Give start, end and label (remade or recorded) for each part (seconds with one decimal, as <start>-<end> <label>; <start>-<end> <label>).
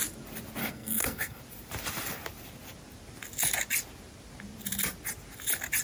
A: 0.0-0.6 recorded; 0.6-1.4 remade; 1.4-5.8 recorded